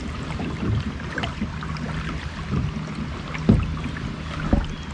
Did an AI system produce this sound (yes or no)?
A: no